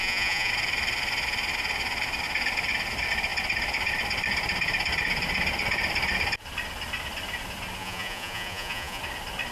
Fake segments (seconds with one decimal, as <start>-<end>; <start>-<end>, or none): 0.0-0.5; 7.8-9.0

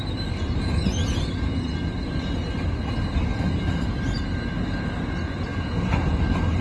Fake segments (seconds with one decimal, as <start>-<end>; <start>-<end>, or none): 0.0-0.8; 3.4-6.6

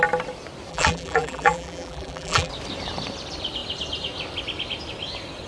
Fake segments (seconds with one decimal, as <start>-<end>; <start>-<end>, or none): 0.7-2.5

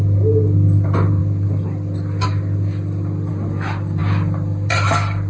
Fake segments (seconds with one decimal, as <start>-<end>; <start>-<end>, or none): none

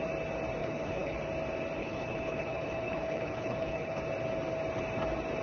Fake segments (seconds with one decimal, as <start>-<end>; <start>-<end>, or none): 0.6-1.2; 1.8-4.0